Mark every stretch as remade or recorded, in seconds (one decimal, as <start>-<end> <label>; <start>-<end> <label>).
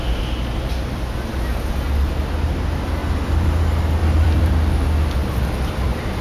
0.0-3.0 recorded; 3.0-3.6 remade; 3.6-4.0 recorded; 4.0-4.5 remade; 4.5-5.2 recorded; 5.2-6.2 remade